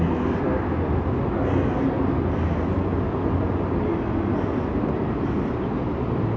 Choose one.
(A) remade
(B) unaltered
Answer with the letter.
B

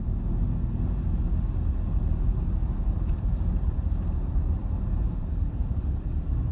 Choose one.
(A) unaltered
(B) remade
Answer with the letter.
B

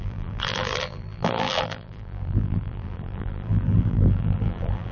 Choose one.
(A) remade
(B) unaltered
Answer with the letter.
A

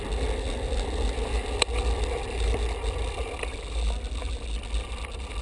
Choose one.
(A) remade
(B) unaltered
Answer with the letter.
B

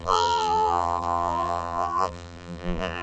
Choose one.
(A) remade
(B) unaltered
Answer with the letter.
A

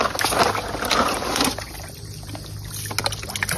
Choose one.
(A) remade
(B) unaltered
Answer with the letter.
B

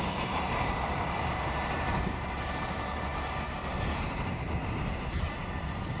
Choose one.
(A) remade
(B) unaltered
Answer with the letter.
A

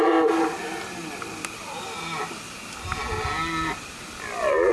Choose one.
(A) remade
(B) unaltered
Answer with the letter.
B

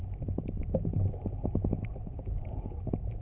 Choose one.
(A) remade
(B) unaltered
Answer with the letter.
B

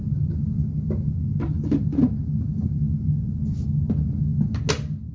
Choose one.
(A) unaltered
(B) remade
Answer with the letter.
A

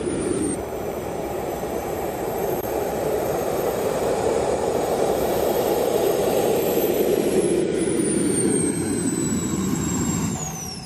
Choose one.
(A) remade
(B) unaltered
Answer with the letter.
A